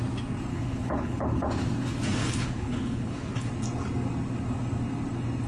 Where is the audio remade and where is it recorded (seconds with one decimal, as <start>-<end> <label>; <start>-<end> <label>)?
0.0-0.5 recorded; 0.5-1.4 remade; 1.4-2.2 recorded; 2.2-3.5 remade; 3.5-5.5 recorded